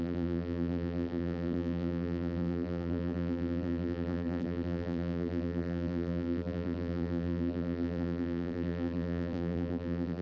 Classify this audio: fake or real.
fake